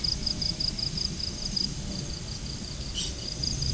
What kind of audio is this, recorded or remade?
recorded